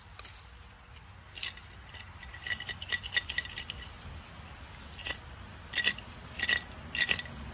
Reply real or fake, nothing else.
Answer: real